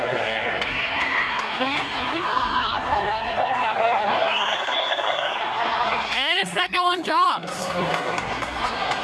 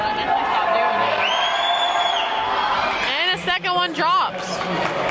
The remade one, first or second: first